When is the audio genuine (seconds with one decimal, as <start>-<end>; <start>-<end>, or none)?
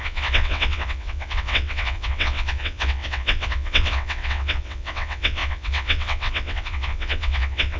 none